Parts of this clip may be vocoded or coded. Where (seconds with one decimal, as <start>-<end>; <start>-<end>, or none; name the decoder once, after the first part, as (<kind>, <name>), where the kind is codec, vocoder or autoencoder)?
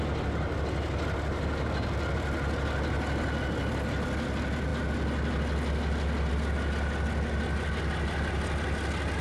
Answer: none